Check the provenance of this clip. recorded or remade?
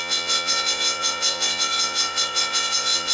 remade